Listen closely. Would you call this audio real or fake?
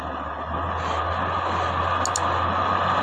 real